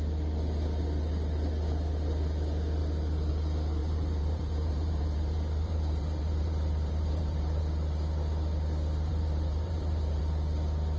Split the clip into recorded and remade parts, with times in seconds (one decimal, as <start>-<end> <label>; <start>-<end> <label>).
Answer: 0.0-3.8 recorded; 3.8-7.6 remade; 7.6-9.1 recorded; 9.1-10.2 remade; 10.2-11.0 recorded